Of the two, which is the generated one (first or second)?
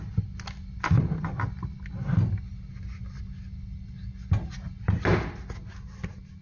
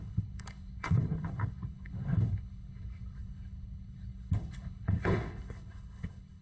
second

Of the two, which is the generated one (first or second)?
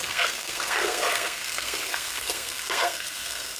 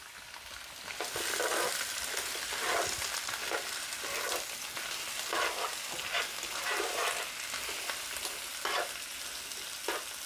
first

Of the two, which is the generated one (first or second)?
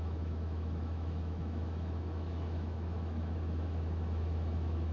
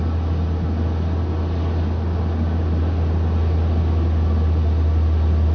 first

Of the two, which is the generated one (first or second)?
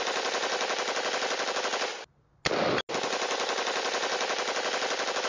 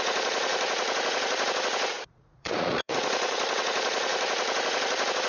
second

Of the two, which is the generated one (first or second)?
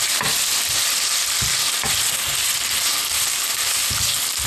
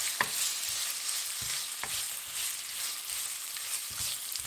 first